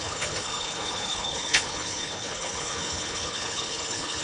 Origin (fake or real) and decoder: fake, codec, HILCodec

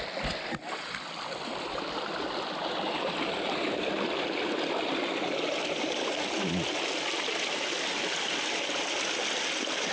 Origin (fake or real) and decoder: real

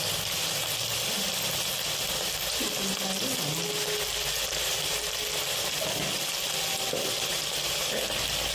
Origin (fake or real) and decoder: real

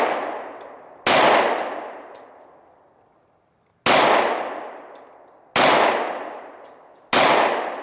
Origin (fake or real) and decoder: real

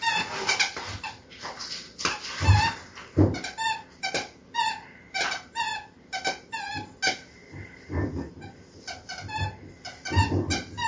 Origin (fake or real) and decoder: real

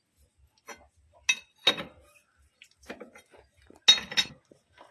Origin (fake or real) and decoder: real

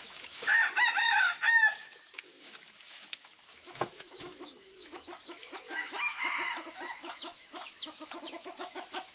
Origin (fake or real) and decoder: fake, autoencoder, DAC-VAE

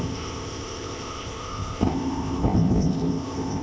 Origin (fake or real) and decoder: fake, codec, ZipCodec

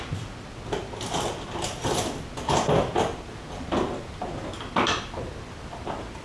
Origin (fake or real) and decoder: real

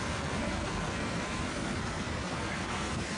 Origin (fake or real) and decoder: fake, codec, SNAC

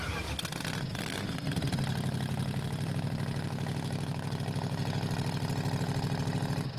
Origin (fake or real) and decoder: real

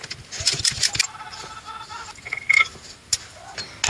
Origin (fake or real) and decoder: real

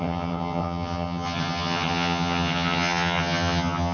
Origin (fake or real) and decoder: fake, vocoder, HiFi-GAN